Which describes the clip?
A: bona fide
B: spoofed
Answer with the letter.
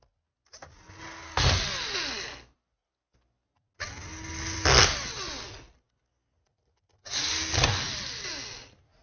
A